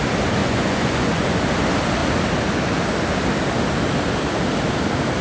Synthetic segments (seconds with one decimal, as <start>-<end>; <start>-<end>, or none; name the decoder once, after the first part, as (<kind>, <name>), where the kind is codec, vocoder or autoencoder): 0.4-1.4 (vocoder, Vocos)